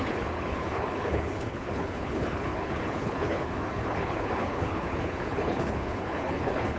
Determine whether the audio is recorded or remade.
remade